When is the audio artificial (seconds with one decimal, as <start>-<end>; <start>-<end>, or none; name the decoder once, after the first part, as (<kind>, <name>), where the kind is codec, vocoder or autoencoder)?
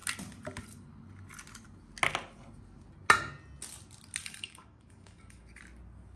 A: 4.2-5.6 (codec, DAC)